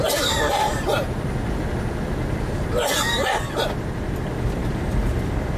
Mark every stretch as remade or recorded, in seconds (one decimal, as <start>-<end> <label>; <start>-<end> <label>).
0.0-5.6 recorded